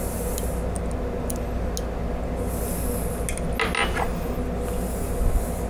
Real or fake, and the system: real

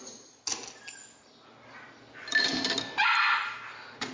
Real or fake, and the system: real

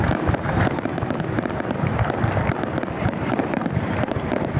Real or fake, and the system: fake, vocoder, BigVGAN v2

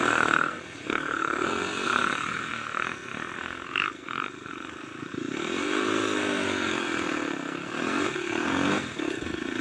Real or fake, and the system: fake, codec, SNAC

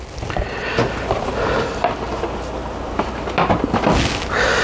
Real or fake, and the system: real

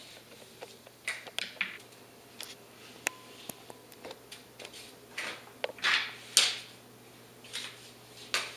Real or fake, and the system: real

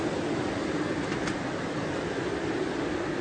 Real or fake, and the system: real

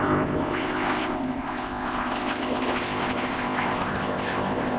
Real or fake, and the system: fake, codec, ZipCodec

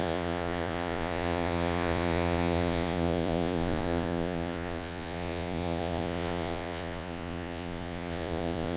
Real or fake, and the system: fake, vocoder, Vocos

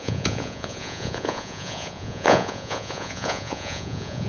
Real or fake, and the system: fake, vocoder, Vocos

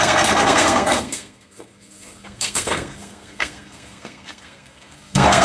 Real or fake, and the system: fake, codec, SNAC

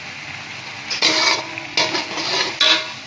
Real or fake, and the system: real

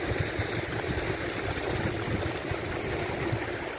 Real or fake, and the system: real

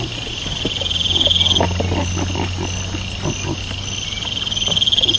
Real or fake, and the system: real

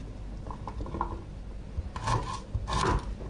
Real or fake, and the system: real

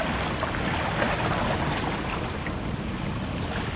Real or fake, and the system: real